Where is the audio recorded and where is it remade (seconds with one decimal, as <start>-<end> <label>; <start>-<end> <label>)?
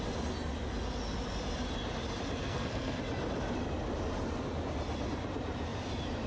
0.0-2.4 recorded; 2.4-3.0 remade; 3.0-6.3 recorded